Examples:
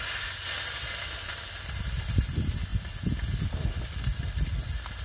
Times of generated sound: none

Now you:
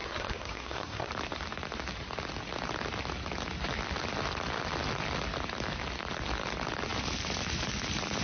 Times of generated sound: 0.0-1.1 (codec, SNAC)

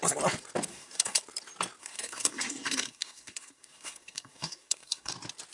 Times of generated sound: 0.7-1.2 (codec, SNAC); 1.8-5.1

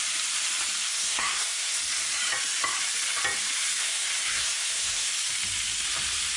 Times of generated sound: 0.9-1.8 (codec, SNAC); 3.8-5.1

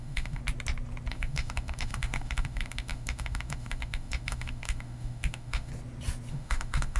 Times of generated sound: 0.0-0.4 (autoencoder, DAC-VAE); 1.1-5.7; 6.3-7.0

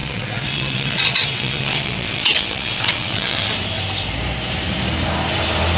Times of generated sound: 0.0-3.5 (vocoder, WaveNeXt)

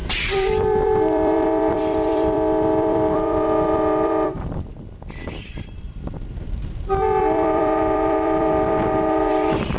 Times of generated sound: 0.0-9.8 (vocoder, BigVGAN v2)

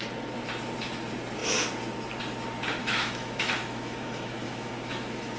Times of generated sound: 2.8-5.4 (autoencoder, DAC-VAE)